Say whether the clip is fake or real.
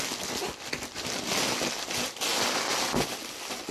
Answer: real